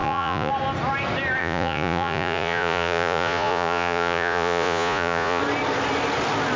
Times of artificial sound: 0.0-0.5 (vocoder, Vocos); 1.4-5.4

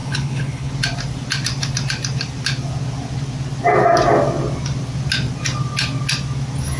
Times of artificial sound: 0.0-0.7 (codec, HILCodec)

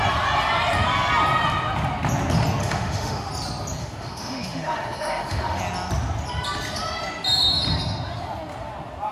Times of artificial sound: 2.6-3.3 (autoencoder, DAC-VAE); 3.8-5.6